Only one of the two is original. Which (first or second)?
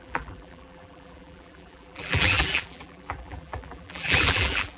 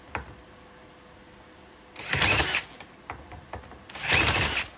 second